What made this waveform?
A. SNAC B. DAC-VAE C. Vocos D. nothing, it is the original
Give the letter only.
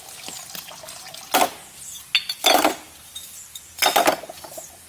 D